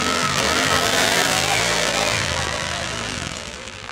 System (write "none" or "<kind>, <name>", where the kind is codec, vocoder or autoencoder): vocoder, BigVGAN v2